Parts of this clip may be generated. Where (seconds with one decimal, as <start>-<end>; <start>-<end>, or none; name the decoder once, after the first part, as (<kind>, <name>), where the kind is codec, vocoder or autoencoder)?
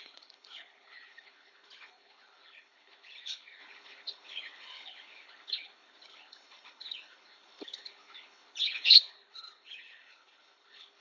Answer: 0.0-11.0 (codec, HILCodec)